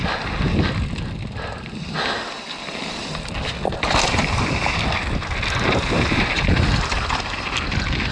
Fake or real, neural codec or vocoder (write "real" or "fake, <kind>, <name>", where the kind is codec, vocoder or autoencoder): real